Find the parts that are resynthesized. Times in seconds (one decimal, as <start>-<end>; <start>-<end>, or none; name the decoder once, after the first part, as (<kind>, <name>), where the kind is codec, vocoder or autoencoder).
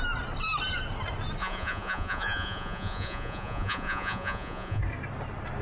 1.4-4.8 (vocoder, Vocos)